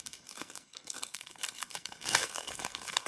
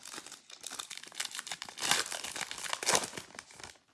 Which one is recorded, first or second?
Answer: second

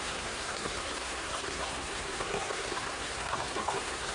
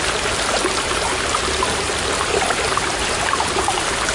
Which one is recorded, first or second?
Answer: second